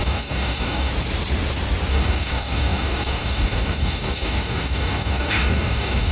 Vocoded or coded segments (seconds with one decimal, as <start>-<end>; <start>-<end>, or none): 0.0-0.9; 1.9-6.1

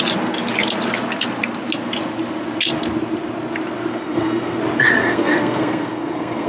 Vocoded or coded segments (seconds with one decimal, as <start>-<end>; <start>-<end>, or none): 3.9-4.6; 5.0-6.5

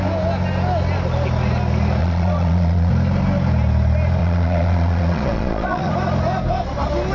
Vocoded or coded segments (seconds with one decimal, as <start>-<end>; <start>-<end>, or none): 2.0-2.9; 4.2-5.9

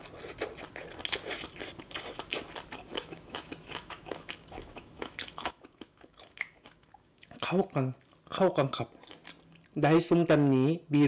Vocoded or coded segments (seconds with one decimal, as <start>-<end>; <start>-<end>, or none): 2.9-7.6

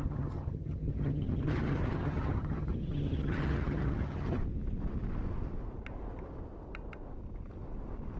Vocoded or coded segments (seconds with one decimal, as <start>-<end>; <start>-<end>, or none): 0.0-4.4